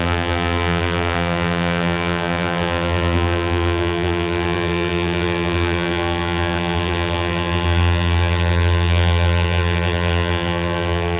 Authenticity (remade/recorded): remade